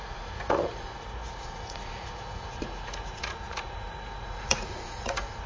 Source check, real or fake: fake